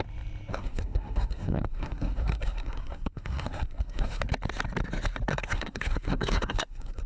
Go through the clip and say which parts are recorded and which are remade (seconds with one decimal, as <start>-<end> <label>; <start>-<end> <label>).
0.0-0.5 recorded; 0.5-4.2 remade; 4.2-5.3 recorded; 5.3-7.1 remade